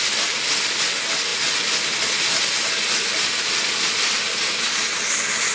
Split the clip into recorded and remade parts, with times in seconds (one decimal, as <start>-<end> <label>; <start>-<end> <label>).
0.0-5.5 recorded

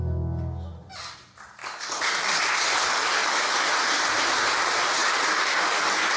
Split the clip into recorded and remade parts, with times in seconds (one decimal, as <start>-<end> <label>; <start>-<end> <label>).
0.0-1.6 recorded; 1.6-2.4 remade; 2.4-2.9 recorded; 2.9-3.7 remade; 3.7-5.0 recorded; 5.0-5.8 remade; 5.8-6.2 recorded

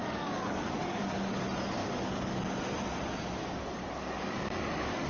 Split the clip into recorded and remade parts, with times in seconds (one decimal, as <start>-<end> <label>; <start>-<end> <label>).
0.0-1.4 remade; 1.4-1.8 recorded; 1.8-2.4 remade; 2.4-3.4 recorded; 3.4-5.1 remade

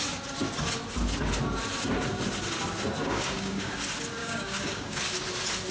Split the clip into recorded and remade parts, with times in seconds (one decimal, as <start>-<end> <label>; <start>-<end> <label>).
0.0-3.0 recorded; 3.0-3.7 remade; 3.7-4.2 recorded; 4.2-5.0 remade; 5.0-5.7 recorded